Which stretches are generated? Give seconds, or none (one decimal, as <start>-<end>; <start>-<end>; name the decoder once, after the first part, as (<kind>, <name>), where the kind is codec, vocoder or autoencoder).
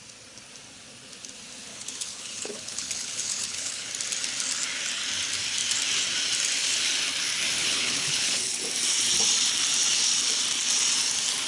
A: 1.7-3.9 (codec, HILCodec); 7.6-8.6